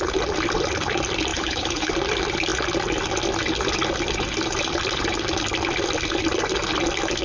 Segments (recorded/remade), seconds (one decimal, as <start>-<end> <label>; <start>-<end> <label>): 0.0-1.3 recorded; 1.3-1.9 remade; 1.9-7.2 recorded